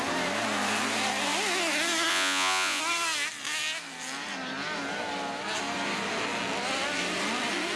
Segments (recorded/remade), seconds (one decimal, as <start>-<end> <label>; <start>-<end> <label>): 0.0-2.1 recorded; 2.1-2.8 remade; 2.8-7.8 recorded